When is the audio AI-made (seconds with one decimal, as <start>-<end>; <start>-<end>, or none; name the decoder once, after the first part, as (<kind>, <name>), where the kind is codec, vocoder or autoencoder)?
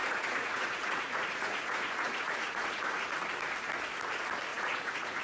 0.0-3.1 (vocoder, Vocos); 4.5-5.2